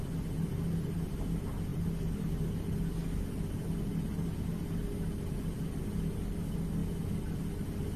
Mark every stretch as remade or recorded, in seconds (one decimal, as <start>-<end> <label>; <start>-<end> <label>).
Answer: 0.0-8.0 recorded